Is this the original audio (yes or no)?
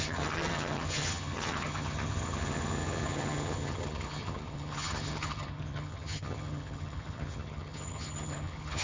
no